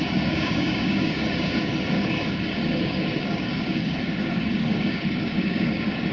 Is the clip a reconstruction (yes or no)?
yes